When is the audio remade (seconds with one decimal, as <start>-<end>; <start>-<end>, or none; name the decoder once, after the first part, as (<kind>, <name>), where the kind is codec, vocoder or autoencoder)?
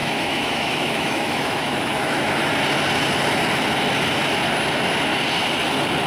0.0-2.5 (autoencoder, DAC-VAE)